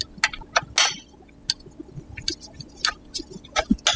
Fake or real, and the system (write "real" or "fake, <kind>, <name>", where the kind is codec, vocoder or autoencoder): real